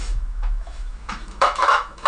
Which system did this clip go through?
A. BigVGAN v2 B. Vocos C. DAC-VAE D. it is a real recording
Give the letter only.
C